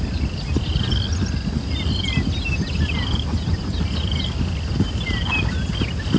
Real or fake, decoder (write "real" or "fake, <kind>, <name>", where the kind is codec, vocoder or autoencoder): real